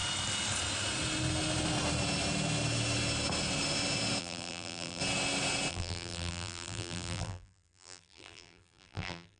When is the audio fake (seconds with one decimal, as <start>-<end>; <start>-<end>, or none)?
4.2-5.0; 5.7-9.4